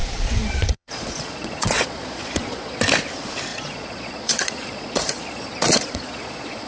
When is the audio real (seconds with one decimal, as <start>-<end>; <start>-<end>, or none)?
2.8-3.5